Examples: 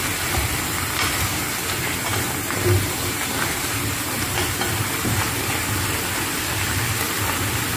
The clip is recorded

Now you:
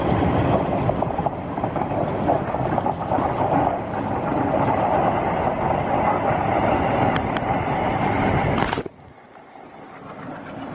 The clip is recorded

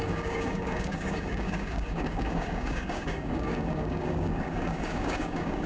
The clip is remade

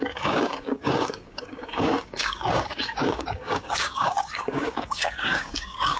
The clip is remade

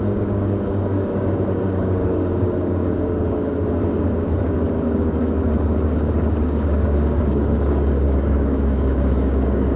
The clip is remade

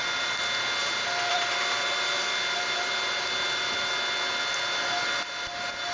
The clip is recorded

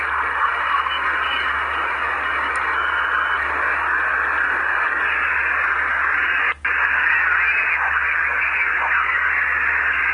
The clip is recorded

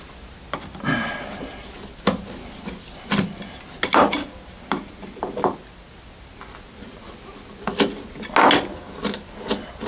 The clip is recorded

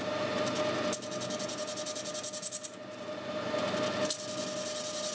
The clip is recorded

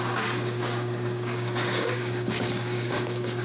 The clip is remade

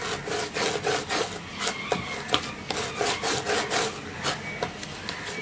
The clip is recorded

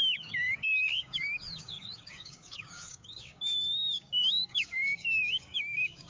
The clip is remade